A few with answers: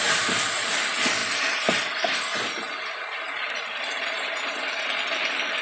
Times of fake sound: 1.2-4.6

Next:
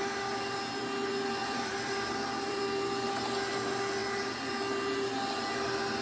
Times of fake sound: 1.4-2.6

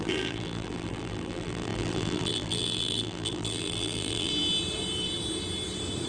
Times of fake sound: 0.0-4.3